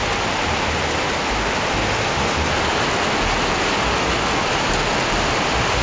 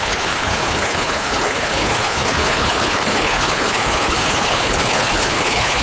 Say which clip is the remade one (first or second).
second